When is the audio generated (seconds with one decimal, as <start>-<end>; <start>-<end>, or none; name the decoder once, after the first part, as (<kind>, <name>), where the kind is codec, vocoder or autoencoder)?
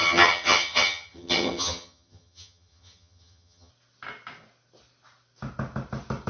0.0-3.7 (vocoder, HiFi-GAN)